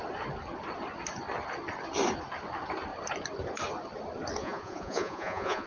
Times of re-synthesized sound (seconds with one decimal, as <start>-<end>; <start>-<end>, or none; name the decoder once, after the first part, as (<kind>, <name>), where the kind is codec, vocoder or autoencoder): 4.4-5.7 (vocoder, Vocos)